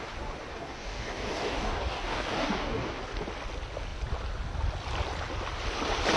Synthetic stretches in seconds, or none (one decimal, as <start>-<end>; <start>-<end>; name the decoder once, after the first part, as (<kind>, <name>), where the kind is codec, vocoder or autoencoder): 0.5-3.0 (codec, DAC)